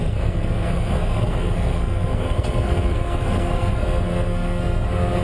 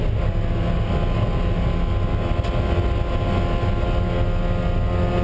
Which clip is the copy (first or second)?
first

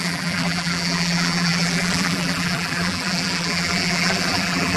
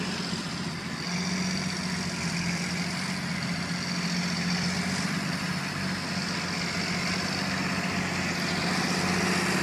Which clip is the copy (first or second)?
first